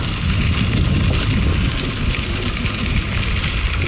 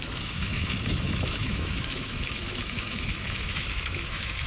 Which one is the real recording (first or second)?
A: first